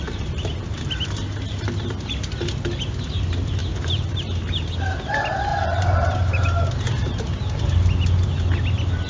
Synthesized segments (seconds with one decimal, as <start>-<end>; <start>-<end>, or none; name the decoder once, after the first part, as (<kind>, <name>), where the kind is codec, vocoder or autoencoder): 3.6-4.8 (vocoder, BigVGAN v2); 5.5-7.6